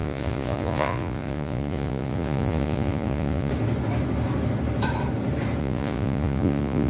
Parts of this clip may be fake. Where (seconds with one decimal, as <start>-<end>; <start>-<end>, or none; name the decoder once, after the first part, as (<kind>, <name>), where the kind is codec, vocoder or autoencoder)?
0.0-3.5 (vocoder, Vocos); 5.6-6.9